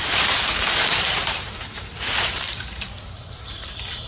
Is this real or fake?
fake